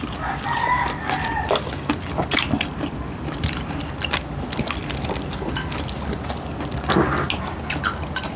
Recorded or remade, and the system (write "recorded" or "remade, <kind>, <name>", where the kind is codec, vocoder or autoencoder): recorded